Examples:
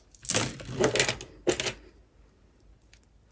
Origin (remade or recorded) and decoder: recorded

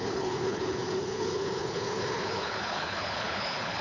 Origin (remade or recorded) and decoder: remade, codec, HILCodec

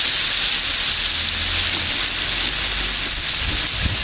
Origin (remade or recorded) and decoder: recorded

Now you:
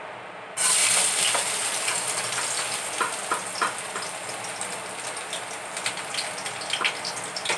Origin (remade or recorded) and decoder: recorded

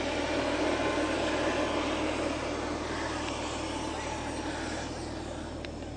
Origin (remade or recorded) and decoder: recorded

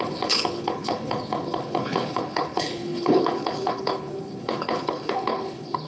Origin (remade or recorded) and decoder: remade, codec, HILCodec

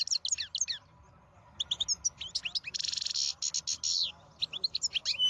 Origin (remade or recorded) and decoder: recorded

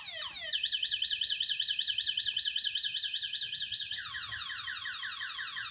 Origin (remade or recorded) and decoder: recorded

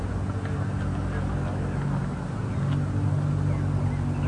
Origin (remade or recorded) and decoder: recorded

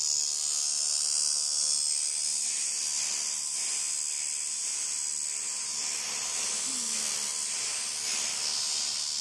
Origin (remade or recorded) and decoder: recorded